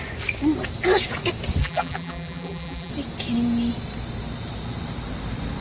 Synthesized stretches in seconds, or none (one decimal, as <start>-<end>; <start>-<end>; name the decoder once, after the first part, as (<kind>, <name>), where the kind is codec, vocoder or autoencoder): 1.6-2.9 (vocoder, BigVGAN v2)